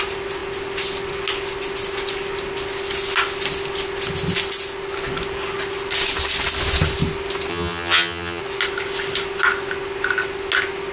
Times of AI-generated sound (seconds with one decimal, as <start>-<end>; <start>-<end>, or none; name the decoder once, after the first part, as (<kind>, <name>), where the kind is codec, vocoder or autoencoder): 7.5-8.4 (vocoder, HiFi-GAN)